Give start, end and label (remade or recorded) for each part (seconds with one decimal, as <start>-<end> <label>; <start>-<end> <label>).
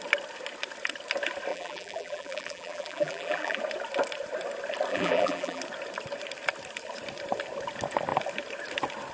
0.0-1.5 recorded; 1.5-3.6 remade; 3.6-4.9 recorded; 4.9-5.6 remade; 5.6-9.1 recorded